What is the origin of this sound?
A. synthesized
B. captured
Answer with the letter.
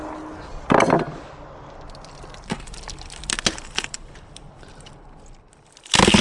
B